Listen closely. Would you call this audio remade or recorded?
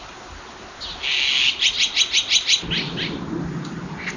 recorded